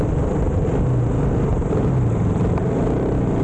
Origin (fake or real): real